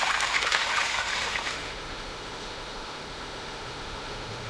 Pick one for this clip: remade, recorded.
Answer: remade